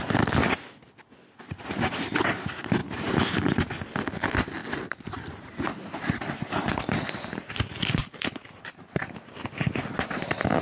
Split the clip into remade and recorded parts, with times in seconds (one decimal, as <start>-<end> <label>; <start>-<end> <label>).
0.0-2.8 recorded; 2.8-3.7 remade; 3.7-8.0 recorded; 8.0-9.0 remade; 9.0-10.6 recorded